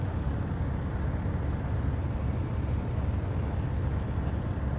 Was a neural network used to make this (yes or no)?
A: no